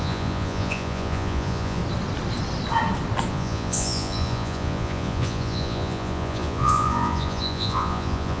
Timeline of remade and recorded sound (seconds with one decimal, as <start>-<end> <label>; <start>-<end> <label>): 0.0-1.8 remade; 1.8-3.3 recorded; 3.3-8.4 remade